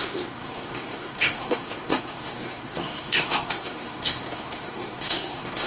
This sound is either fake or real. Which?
fake